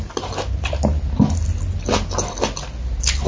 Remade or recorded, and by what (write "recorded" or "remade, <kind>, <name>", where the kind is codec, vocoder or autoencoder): recorded